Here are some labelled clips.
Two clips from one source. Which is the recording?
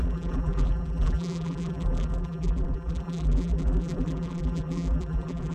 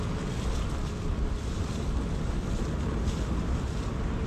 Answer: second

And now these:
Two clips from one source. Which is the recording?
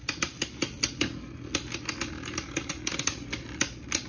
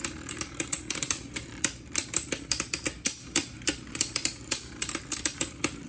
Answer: first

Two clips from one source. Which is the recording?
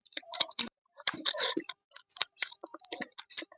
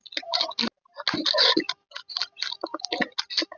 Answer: second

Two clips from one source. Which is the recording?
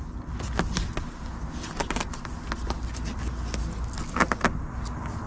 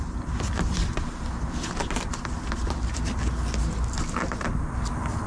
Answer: first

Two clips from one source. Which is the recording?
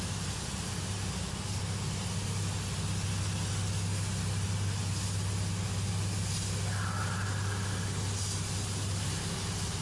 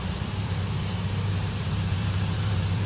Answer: first